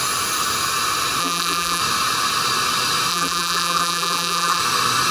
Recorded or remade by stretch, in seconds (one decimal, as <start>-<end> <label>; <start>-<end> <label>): 0.0-1.2 recorded; 1.2-1.8 remade; 1.8-3.1 recorded; 3.1-4.6 remade; 4.6-5.1 recorded